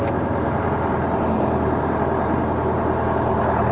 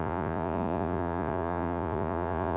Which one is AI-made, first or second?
second